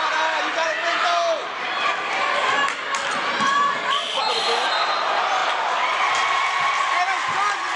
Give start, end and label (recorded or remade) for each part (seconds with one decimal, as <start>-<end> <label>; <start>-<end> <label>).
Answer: 0.0-7.8 recorded